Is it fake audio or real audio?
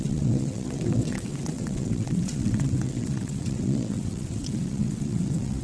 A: fake